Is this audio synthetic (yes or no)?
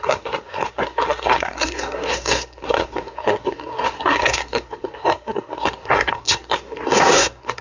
yes